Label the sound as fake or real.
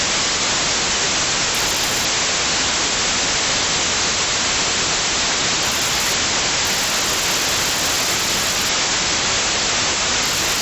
real